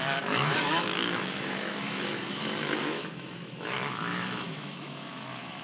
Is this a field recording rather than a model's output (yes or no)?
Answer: no